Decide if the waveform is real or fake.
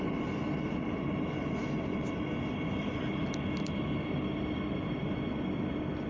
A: real